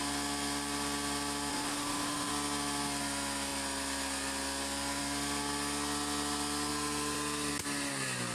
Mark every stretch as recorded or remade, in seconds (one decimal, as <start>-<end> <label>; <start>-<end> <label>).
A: 0.0-1.5 recorded; 1.5-2.3 remade; 2.3-8.3 recorded

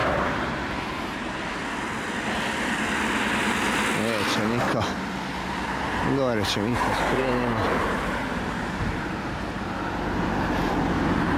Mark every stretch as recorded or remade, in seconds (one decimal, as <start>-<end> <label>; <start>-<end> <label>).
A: 0.0-1.3 remade; 1.3-6.7 recorded; 6.7-11.4 remade

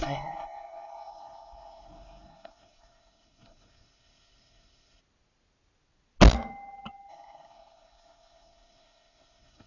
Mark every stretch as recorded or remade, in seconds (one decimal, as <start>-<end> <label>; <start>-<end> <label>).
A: 0.0-5.0 remade; 5.0-7.1 recorded; 7.1-9.7 remade